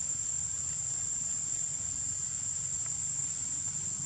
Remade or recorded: recorded